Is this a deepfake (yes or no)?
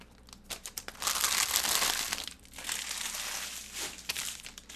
no